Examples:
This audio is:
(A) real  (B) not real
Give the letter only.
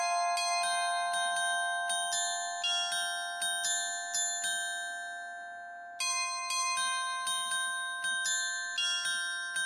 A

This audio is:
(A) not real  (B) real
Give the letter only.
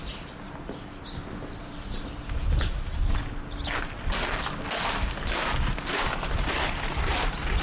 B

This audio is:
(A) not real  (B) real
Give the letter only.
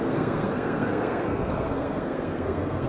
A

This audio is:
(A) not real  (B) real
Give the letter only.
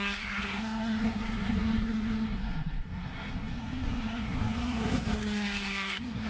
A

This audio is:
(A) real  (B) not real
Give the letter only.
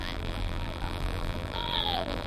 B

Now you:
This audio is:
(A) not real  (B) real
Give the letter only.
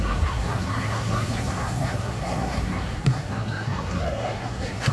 A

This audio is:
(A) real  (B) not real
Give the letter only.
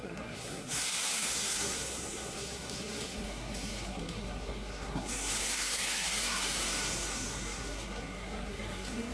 B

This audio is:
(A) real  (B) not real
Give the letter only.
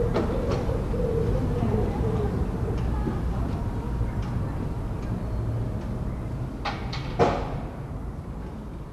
A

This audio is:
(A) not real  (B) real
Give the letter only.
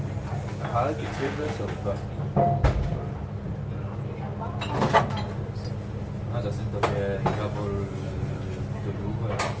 B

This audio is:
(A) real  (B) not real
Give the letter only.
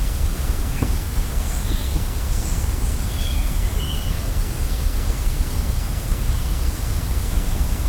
B